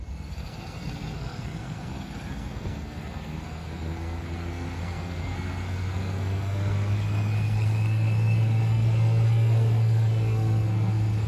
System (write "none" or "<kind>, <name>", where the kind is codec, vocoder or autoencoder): codec, SNAC